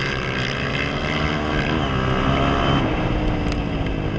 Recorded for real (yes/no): yes